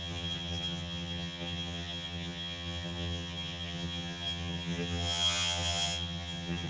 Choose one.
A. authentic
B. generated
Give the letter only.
B